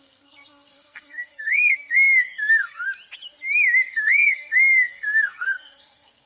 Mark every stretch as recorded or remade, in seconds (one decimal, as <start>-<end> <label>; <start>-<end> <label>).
0.0-2.8 remade; 2.8-3.9 recorded; 3.9-6.3 remade